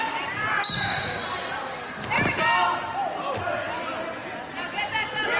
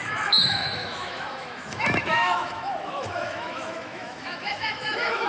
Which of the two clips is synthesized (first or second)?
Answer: second